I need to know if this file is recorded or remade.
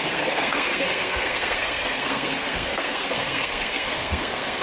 remade